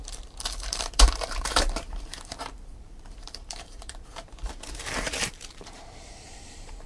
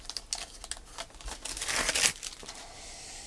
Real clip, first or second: second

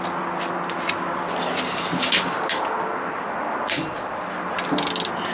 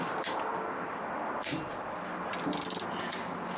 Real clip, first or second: first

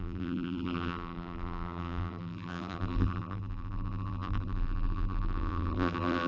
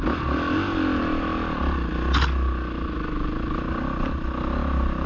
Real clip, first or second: second